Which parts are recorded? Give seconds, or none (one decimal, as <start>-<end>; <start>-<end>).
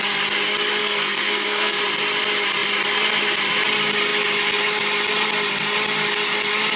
0.0-0.8; 1.8-6.8